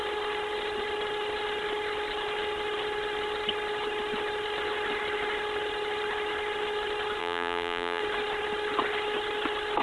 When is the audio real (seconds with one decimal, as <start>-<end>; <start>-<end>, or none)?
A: 0.0-7.2; 8.0-9.8